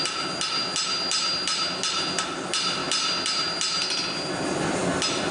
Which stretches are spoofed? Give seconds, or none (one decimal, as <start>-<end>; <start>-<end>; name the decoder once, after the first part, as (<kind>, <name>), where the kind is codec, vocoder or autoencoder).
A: none